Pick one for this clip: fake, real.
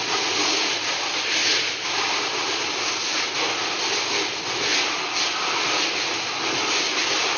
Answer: real